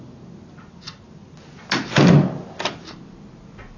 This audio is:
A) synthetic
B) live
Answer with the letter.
B